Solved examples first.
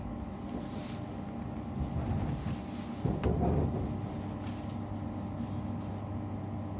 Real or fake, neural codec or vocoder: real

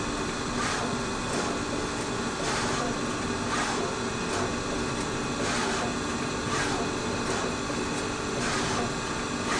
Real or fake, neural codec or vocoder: real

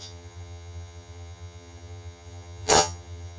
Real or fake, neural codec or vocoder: fake, vocoder, HiFi-GAN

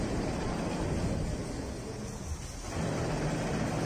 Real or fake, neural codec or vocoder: real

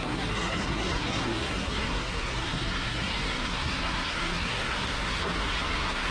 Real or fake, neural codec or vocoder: fake, codec, SNAC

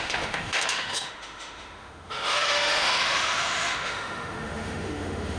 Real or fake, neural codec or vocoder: fake, autoencoder, DAC-VAE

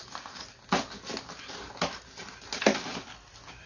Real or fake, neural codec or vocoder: real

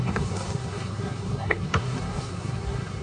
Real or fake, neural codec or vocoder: fake, codec, SNAC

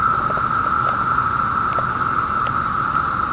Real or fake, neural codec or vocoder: real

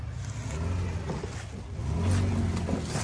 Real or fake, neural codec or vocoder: real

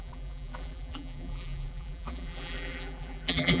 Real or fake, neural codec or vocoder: fake, vocoder, BigVGAN v2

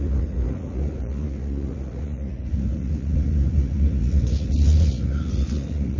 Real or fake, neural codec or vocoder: fake, vocoder, Vocos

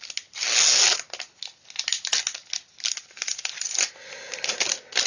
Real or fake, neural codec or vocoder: real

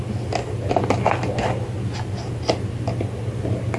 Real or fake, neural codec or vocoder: real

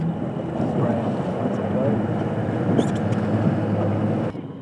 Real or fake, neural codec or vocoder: real